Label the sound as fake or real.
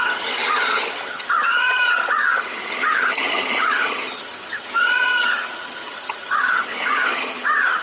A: fake